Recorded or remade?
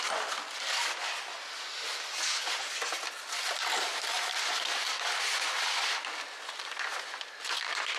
recorded